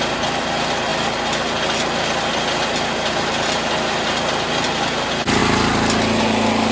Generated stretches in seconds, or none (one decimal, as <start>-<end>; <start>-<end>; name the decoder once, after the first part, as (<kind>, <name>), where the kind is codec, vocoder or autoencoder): none